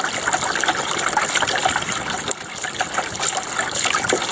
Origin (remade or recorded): recorded